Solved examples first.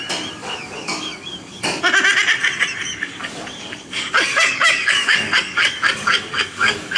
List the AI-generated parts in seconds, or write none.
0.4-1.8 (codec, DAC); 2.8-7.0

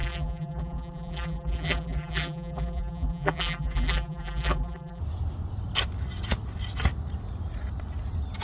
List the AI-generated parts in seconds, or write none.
0.0-5.0 (vocoder, BigVGAN v2)

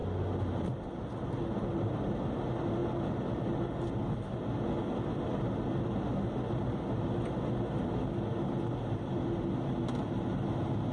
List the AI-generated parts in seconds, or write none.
none

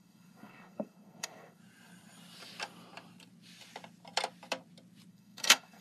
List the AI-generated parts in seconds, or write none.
0.0-1.6 (codec, SNAC); 5.1-5.8

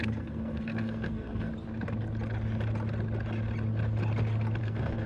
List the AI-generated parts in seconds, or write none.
0.0-1.5 (codec, SNAC); 4.6-5.1

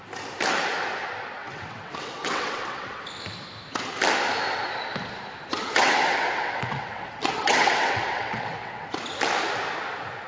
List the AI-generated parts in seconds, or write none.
1.4-3.0 (vocoder, WaveNeXt); 5.6-9.0

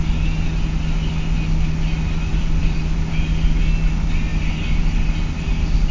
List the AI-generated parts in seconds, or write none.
none

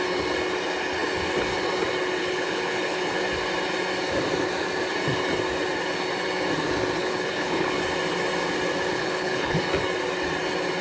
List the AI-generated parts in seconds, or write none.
2.2-3.1 (codec, HILCodec); 7.0-7.8; 8.9-9.6